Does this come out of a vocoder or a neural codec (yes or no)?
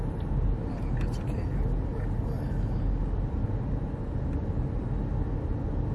no